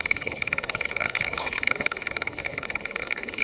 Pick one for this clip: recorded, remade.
remade